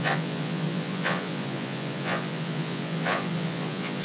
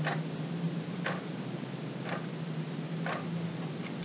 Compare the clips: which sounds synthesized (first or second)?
first